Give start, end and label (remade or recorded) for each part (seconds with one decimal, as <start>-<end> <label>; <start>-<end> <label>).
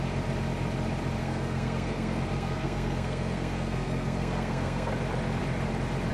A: 0.0-1.2 recorded; 1.2-4.9 remade; 4.9-6.1 recorded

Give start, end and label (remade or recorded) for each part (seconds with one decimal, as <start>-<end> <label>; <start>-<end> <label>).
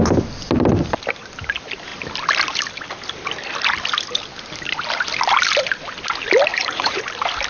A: 0.0-6.5 recorded; 6.5-7.0 remade; 7.0-7.5 recorded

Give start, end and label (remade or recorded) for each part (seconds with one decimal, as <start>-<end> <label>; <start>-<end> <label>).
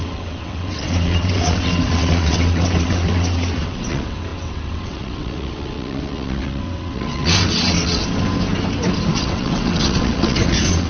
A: 0.0-8.0 remade; 8.0-9.1 recorded; 9.1-10.9 remade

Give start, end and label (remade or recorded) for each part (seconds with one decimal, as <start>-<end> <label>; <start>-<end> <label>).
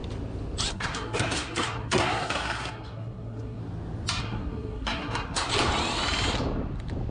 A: 0.0-0.7 recorded; 0.7-3.6 remade; 3.6-4.2 recorded; 4.2-5.5 remade; 5.5-7.1 recorded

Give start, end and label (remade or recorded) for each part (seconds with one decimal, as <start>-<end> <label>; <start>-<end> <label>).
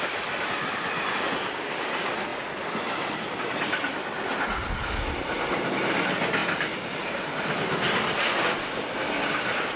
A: 0.0-9.8 recorded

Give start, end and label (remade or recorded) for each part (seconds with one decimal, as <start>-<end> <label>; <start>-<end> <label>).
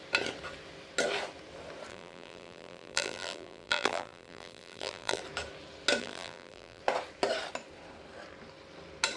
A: 0.0-1.9 recorded; 1.9-5.2 remade; 5.2-6.0 recorded; 6.0-6.8 remade; 6.8-9.2 recorded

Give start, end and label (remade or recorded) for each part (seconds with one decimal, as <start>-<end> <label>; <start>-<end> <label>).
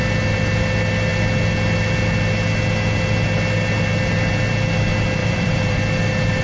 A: 0.0-5.2 recorded; 5.2-5.8 remade; 5.8-6.4 recorded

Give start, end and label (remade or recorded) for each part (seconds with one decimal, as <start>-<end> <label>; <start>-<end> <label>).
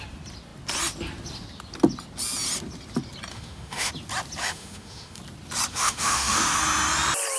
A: 0.0-3.3 recorded; 3.3-3.9 remade; 3.9-4.4 recorded; 4.4-5.2 remade; 5.2-5.7 recorded; 5.7-6.6 remade; 6.6-7.4 recorded